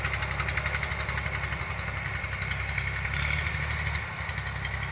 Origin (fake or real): real